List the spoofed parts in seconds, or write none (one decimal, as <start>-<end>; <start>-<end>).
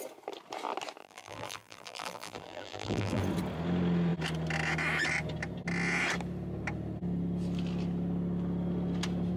1.0-3.2